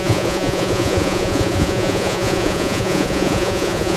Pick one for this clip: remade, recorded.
remade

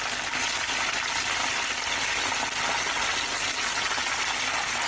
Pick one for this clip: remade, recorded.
recorded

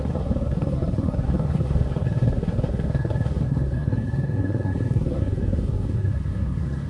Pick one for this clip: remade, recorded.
remade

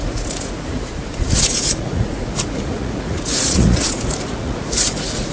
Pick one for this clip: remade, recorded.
remade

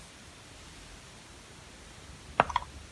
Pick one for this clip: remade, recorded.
recorded